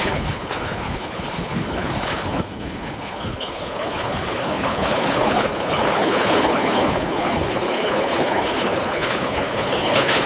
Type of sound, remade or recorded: remade